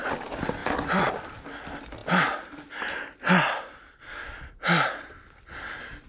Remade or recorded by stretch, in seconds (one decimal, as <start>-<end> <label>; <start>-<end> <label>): 0.0-6.1 recorded